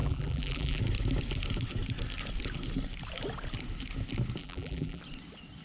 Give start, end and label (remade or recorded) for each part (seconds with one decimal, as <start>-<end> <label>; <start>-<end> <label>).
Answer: 0.0-0.8 remade; 0.8-4.4 recorded; 4.4-5.0 remade; 5.0-5.6 recorded